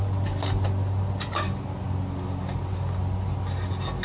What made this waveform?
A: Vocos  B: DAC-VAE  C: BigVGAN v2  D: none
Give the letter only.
D